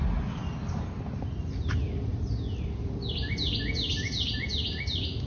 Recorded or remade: recorded